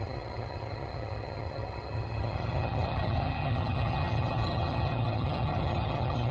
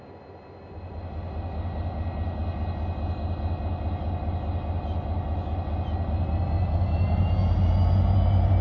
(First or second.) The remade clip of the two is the first